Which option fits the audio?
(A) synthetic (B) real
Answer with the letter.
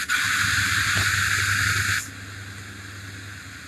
B